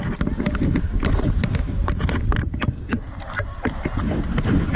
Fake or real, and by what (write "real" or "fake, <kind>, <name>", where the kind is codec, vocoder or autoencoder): real